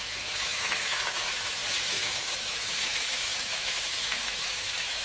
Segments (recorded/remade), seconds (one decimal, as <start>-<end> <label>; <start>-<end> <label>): 0.0-5.0 remade